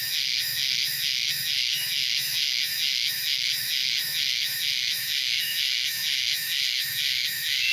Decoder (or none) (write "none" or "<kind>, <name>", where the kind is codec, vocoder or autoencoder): autoencoder, DAC-VAE